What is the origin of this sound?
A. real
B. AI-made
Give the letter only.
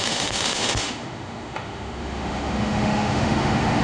B